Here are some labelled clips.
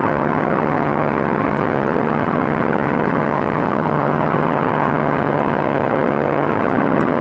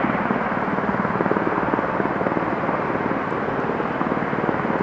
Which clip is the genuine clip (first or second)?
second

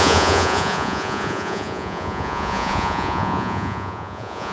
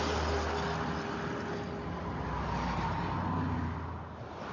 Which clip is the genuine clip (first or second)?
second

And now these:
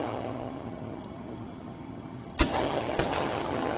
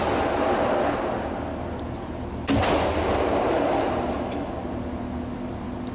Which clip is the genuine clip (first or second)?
second